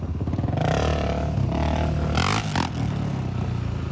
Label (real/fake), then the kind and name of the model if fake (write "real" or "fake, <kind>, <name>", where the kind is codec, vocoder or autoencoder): real